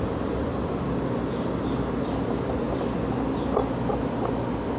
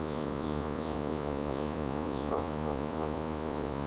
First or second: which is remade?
second